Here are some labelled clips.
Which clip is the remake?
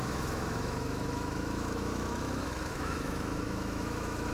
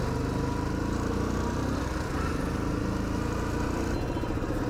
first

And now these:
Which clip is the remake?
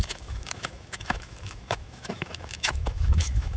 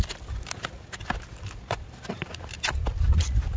first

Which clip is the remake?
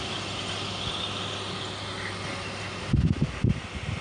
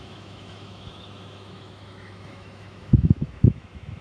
second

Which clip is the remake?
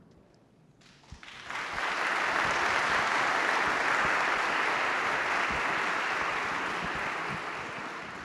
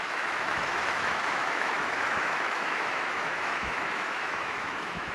second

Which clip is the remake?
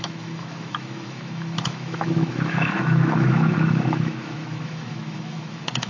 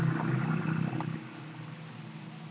first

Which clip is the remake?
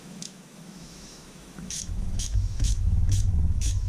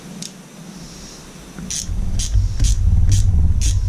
first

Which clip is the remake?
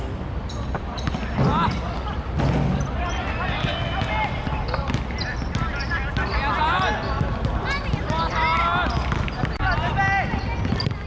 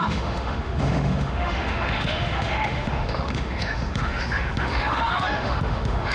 second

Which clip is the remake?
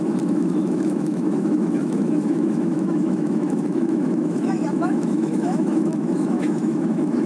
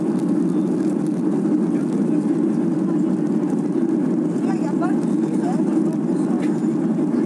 first